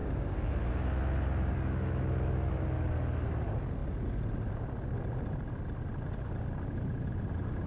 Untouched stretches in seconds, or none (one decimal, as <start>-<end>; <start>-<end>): 0.5-7.7